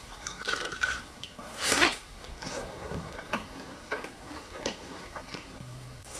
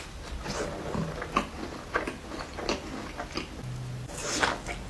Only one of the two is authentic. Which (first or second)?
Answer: second